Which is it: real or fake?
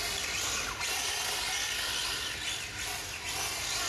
real